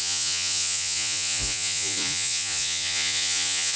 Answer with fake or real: fake